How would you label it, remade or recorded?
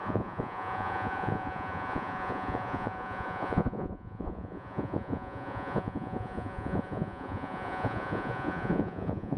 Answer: remade